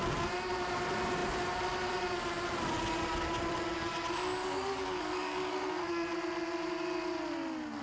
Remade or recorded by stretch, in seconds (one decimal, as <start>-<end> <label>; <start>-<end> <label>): 0.0-4.4 recorded; 4.4-5.9 remade; 5.9-7.8 recorded

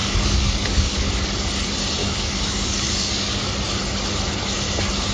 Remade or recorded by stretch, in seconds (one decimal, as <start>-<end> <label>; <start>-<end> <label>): 0.0-1.1 remade; 1.1-2.0 recorded; 2.0-3.5 remade; 3.5-5.1 recorded

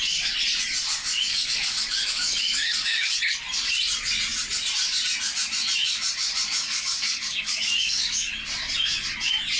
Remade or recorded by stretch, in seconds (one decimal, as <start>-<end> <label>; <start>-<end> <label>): 0.0-1.0 recorded; 1.0-3.2 remade; 3.2-6.6 recorded; 6.6-8.3 remade; 8.3-9.6 recorded

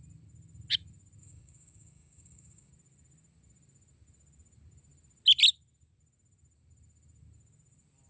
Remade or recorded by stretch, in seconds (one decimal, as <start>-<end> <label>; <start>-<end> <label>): 0.0-1.2 recorded; 1.2-2.7 remade; 2.7-8.1 recorded